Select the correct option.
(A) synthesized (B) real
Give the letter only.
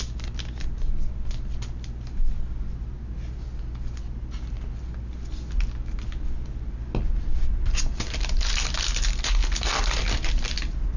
B